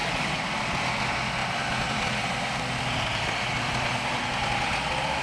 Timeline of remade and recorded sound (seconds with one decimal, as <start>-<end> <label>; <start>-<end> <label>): 0.0-1.4 recorded; 1.4-4.2 remade; 4.2-5.2 recorded